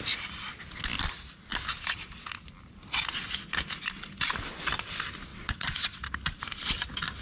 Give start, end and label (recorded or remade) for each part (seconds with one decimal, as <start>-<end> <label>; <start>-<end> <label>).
0.0-5.3 recorded; 5.3-6.0 remade; 6.0-7.2 recorded